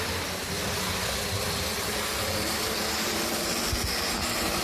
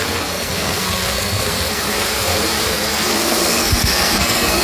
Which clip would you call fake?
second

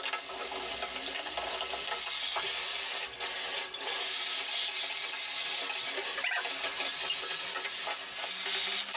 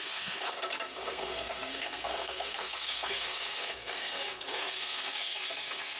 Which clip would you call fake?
second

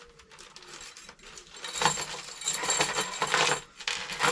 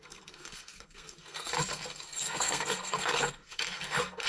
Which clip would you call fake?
second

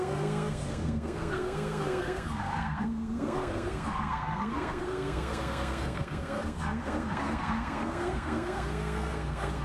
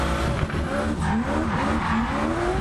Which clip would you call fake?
first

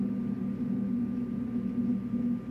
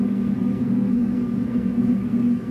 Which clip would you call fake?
second